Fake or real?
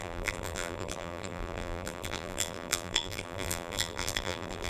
fake